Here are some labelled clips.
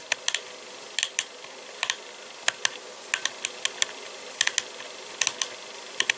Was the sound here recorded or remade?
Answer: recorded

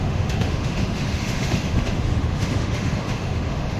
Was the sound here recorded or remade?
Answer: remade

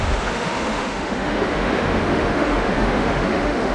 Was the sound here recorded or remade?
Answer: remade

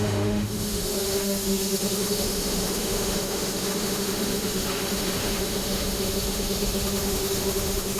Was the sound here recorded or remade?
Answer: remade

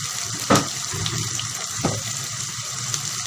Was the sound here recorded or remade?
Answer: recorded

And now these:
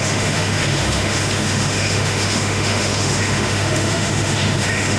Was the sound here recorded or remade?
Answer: remade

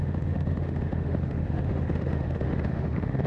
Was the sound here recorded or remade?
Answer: remade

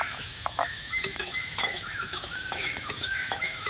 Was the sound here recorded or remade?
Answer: remade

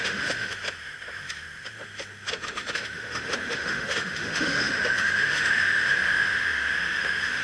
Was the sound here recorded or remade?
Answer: remade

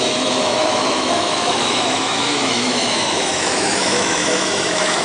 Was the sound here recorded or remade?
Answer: remade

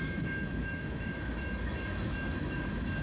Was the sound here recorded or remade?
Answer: remade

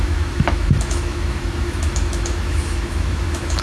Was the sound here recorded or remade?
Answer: remade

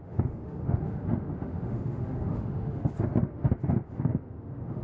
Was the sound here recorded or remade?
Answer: remade